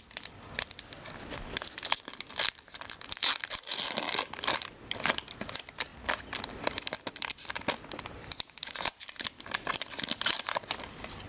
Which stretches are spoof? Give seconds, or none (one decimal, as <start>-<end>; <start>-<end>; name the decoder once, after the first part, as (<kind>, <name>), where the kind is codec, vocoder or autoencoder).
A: 0.0-5.9 (vocoder, BigVGAN v2); 6.6-11.3